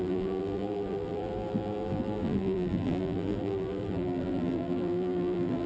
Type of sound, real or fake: fake